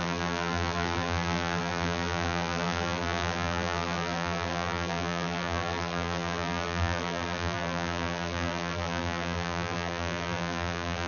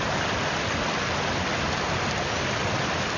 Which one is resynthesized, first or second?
first